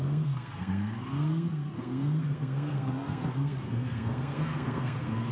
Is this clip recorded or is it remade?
remade